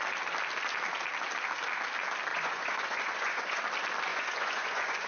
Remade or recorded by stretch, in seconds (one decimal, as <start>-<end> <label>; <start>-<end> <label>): 0.0-2.3 recorded; 2.3-3.6 remade; 3.6-4.1 recorded; 4.1-5.1 remade